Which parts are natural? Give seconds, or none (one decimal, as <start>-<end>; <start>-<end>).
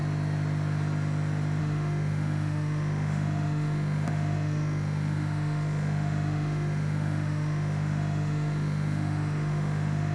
0.0-1.6